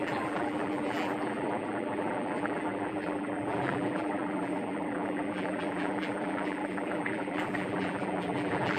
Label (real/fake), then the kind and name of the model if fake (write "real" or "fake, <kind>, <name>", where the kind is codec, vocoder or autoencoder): fake, vocoder, BigVGAN v2